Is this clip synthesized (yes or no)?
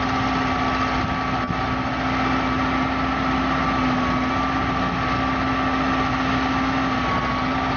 no